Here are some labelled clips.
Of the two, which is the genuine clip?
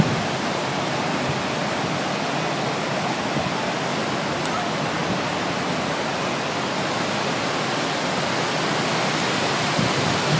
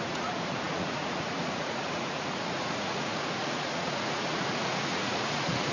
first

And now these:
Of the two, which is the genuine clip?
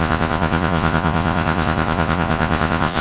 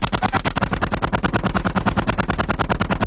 second